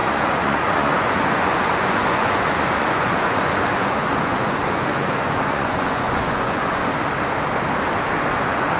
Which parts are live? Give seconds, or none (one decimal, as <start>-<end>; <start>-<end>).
6.9-8.3

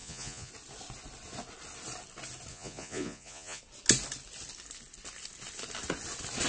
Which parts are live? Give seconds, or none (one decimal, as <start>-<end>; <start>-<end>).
0.5-2.5; 3.6-6.5

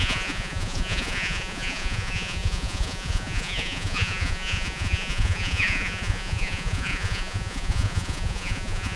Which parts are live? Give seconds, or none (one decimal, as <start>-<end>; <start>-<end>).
none